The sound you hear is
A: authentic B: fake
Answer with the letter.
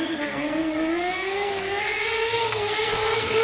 B